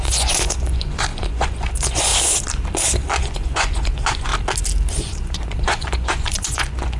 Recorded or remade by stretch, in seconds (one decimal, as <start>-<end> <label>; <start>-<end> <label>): 0.0-2.1 remade; 2.1-3.2 recorded; 3.2-4.3 remade; 4.3-4.9 recorded; 4.9-7.0 remade